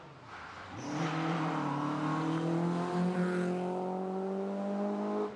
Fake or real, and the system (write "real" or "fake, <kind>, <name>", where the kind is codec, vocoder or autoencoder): real